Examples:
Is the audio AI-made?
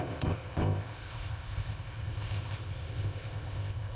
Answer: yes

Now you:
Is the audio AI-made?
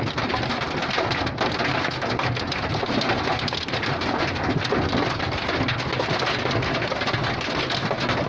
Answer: no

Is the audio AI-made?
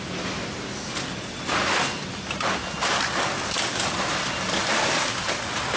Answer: no